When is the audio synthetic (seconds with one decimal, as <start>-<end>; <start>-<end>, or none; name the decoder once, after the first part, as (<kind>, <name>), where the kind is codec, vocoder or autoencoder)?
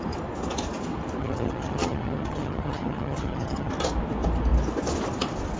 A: 1.2-3.7 (vocoder, HiFi-GAN)